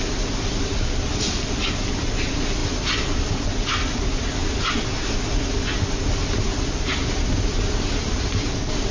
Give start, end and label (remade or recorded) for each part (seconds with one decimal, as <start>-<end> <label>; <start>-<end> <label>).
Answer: 0.0-8.9 recorded